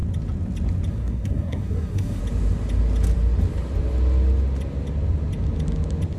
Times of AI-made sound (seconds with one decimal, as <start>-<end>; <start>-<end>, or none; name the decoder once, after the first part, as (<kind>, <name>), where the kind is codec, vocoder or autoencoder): 0.9-2.2 (codec, SNAC)